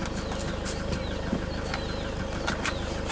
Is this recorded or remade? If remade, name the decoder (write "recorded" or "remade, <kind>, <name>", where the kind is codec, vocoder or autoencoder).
recorded